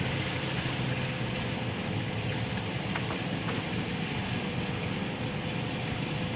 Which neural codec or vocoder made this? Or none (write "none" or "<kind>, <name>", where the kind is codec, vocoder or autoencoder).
none